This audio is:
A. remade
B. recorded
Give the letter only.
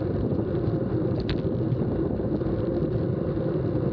A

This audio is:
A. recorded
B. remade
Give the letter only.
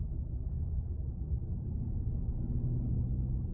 A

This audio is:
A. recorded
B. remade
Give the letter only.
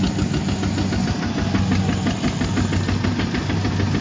A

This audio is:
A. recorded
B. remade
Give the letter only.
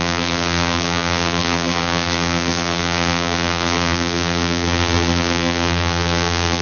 B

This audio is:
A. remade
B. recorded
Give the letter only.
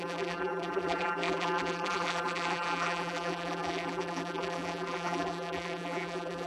A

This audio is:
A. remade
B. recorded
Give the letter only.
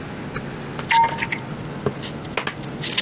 B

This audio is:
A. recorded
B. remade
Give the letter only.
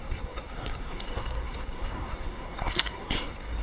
B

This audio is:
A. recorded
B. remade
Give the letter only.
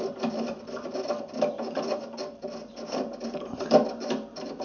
A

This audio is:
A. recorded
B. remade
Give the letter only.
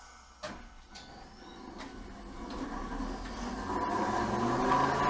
A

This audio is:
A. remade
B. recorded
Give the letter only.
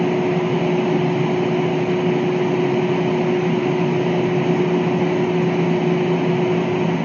B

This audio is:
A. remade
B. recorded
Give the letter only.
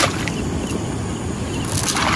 B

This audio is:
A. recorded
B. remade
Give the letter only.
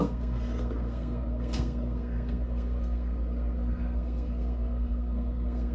B